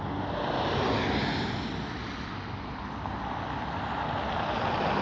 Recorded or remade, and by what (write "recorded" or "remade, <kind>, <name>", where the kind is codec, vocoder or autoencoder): recorded